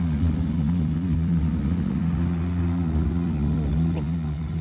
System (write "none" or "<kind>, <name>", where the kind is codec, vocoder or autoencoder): vocoder, Vocos